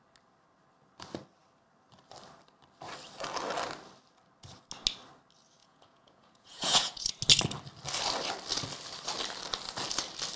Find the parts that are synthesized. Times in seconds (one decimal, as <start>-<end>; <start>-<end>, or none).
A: 5.6-7.1